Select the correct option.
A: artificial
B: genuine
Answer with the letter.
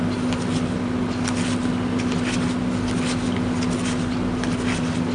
B